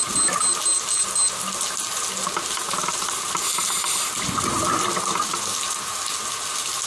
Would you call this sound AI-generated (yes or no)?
no